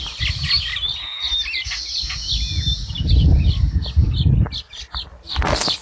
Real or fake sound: fake